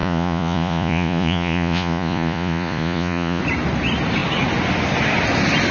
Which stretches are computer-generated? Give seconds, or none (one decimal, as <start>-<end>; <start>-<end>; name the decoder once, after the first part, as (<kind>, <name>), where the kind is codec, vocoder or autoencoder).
0.0-3.4 (vocoder, Vocos)